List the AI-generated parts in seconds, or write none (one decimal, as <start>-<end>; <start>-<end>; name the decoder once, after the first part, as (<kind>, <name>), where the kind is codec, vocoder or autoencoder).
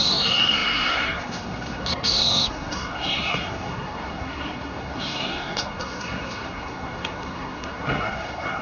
0.0-8.6 (codec, SNAC)